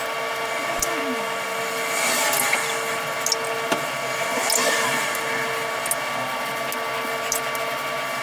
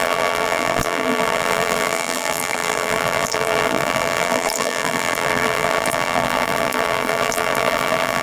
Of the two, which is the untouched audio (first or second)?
first